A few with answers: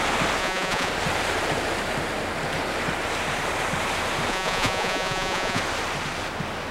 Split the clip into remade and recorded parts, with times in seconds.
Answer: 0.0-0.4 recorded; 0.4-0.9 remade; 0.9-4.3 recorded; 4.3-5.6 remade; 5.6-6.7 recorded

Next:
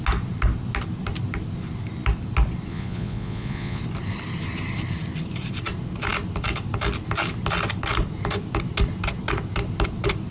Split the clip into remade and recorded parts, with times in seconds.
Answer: 0.0-2.7 recorded; 2.7-3.8 remade; 3.8-10.3 recorded